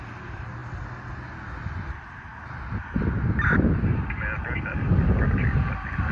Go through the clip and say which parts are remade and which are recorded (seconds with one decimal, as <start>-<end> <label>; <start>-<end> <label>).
0.0-6.1 recorded